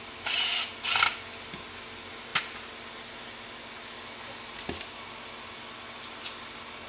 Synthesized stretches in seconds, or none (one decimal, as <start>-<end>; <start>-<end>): none